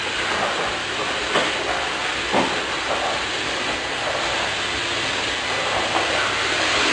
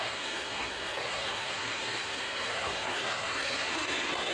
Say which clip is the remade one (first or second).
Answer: second